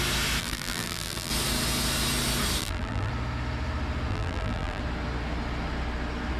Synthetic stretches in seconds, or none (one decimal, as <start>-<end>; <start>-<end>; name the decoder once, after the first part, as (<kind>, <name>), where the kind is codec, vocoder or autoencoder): 0.4-1.3 (vocoder, BigVGAN v2); 2.6-3.1; 4.1-4.8